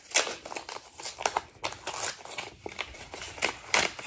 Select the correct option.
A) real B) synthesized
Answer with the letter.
A